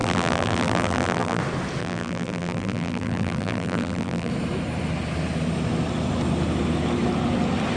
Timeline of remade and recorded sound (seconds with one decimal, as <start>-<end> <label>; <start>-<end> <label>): 0.0-1.4 remade; 1.4-1.8 recorded; 1.8-4.3 remade; 4.3-7.8 recorded